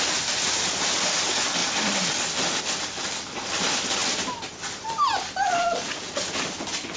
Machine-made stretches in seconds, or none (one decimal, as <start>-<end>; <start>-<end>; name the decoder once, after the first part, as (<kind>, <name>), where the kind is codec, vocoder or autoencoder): none